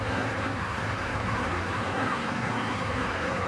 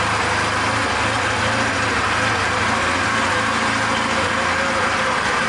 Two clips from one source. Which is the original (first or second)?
second